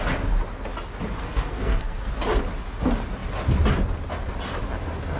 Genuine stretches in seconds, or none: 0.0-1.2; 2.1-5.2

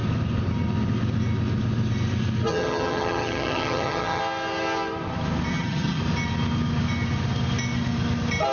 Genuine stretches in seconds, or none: 0.0-2.5; 4.2-5.5; 6.0-8.5